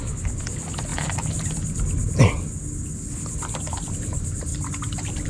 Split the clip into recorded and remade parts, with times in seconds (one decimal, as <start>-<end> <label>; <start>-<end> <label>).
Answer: 0.0-4.5 recorded; 4.5-5.3 remade